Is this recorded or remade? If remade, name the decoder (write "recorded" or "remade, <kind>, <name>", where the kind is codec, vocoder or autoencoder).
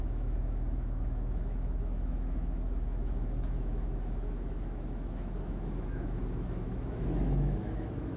remade, autoencoder, DAC-VAE